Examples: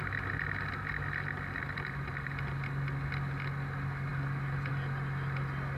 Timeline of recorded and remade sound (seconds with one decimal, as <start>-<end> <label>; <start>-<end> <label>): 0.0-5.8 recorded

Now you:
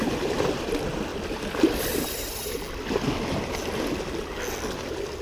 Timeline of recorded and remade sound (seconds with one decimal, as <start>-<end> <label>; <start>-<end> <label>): 0.0-5.2 recorded

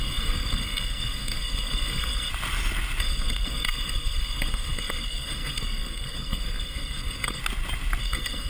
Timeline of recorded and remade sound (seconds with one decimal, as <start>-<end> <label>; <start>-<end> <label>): 0.0-2.3 remade; 2.3-3.0 recorded; 3.0-7.4 remade; 7.4-8.0 recorded; 8.0-8.5 remade